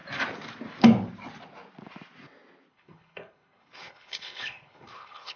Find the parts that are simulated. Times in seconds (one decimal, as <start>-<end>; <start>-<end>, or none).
2.7-5.4